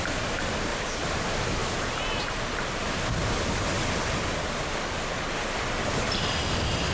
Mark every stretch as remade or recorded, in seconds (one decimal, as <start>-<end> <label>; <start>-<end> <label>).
0.0-6.9 recorded